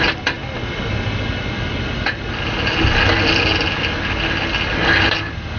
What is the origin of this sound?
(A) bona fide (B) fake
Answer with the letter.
A